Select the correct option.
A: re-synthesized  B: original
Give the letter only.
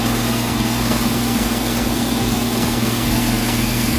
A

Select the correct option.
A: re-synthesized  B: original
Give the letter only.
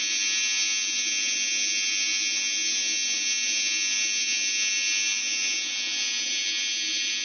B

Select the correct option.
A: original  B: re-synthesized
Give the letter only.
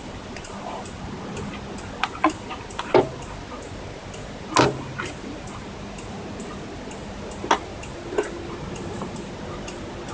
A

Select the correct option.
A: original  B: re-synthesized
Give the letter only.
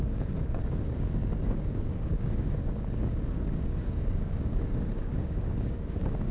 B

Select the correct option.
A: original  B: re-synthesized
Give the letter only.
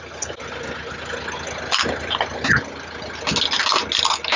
A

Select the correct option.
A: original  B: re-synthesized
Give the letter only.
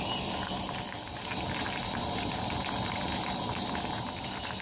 A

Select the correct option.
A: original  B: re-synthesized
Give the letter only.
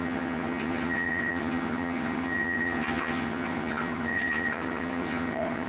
B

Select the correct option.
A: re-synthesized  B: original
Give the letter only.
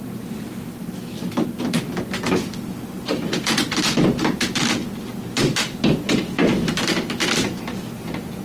A